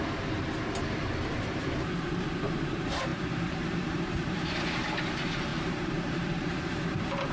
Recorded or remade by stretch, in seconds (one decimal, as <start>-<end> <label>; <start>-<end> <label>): 0.0-7.3 remade